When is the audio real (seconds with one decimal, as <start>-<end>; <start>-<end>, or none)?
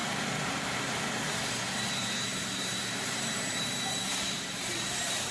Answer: 0.9-2.3